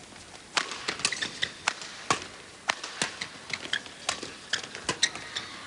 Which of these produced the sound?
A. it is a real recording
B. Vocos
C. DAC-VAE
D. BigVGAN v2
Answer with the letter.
A